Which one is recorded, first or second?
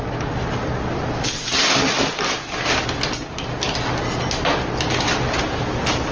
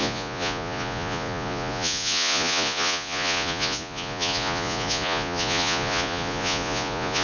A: first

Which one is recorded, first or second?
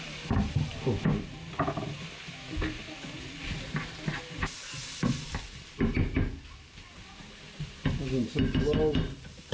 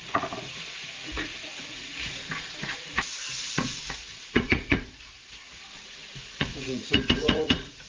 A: first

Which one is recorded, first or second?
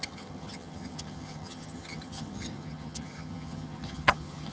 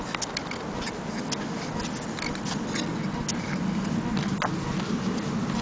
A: second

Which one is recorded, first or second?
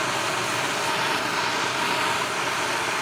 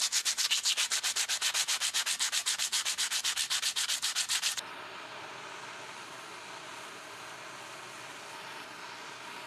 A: second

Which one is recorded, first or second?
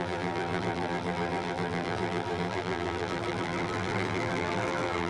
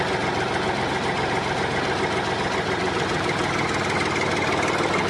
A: second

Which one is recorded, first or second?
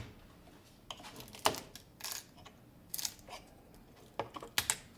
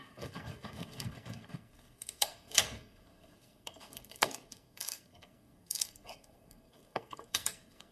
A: first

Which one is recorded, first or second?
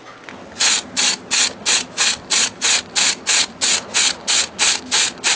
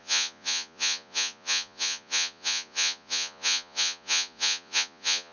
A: first